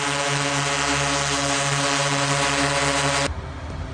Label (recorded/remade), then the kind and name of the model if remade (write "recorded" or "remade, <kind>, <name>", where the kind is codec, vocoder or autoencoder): recorded